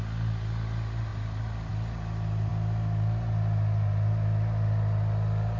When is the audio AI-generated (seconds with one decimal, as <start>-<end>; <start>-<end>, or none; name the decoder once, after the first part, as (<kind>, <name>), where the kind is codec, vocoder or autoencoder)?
none

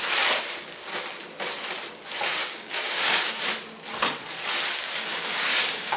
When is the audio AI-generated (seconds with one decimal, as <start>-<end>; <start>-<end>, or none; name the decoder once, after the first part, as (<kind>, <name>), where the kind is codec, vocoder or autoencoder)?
2.4-3.4 (codec, DAC); 5.1-6.0

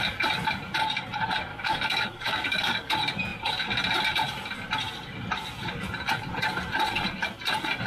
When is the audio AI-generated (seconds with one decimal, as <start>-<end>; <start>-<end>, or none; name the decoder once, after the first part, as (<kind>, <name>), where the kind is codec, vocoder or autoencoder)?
1.5-2.9 (codec, DAC)